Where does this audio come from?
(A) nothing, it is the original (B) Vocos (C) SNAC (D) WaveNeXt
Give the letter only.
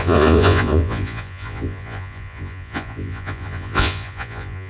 B